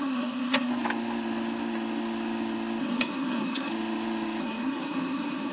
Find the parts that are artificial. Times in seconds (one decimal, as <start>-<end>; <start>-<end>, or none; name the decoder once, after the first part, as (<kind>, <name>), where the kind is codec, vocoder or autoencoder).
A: 0.0-0.7 (codec, SNAC); 2.8-3.7; 4.4-5.5